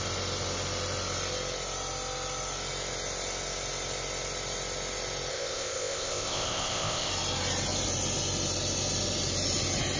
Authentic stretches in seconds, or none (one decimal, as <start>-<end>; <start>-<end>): 0.0-5.3; 7.1-10.0